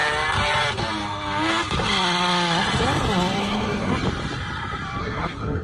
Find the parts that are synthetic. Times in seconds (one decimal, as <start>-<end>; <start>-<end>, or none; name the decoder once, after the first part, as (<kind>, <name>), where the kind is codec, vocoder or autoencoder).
3.4-3.9 (codec, SNAC); 5.0-5.6